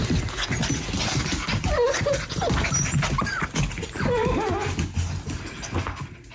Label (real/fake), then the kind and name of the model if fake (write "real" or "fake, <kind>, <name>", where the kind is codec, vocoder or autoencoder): real